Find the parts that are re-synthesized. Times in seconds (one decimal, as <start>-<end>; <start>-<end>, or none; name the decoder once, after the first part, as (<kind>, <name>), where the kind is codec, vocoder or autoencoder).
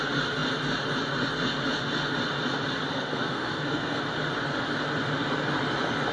2.9-4.0 (codec, SNAC)